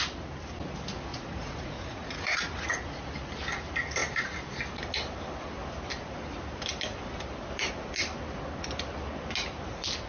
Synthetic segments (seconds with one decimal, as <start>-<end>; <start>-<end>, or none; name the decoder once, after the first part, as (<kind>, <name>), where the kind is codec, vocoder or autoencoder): 1.1-3.1 (vocoder, Vocos)